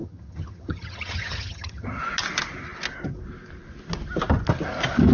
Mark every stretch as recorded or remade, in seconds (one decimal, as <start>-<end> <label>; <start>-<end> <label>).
0.0-2.0 remade; 2.0-5.1 recorded